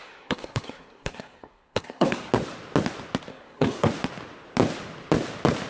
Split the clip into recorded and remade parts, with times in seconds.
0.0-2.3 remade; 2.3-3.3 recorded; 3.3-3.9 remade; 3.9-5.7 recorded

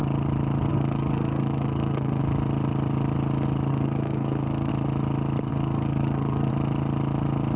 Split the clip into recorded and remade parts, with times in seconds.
0.0-0.7 recorded; 0.7-2.2 remade; 2.2-3.7 recorded; 3.7-4.7 remade; 4.7-5.5 recorded; 5.5-6.5 remade; 6.5-7.6 recorded

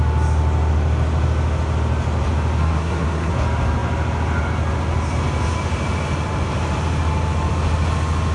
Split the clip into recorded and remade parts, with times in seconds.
0.0-2.6 recorded; 2.6-3.3 remade; 3.3-8.3 recorded

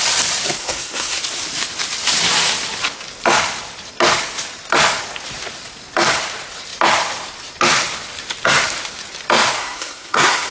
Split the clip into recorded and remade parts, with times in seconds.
0.0-0.6 recorded; 0.6-1.2 remade; 1.2-9.6 recorded; 9.6-10.5 remade

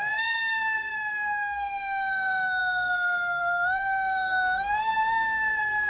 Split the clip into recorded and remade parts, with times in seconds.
0.0-5.9 remade

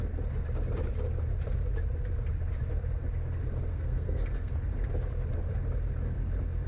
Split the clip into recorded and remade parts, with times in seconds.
0.0-3.7 recorded; 3.7-4.5 remade; 4.5-6.7 recorded